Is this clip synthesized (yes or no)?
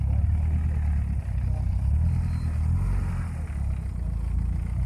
no